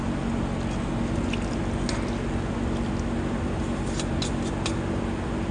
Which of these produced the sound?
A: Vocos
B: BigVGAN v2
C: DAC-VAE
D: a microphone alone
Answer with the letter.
D